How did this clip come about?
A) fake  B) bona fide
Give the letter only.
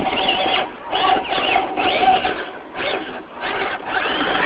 B